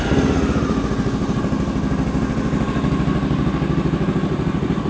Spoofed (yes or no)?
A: no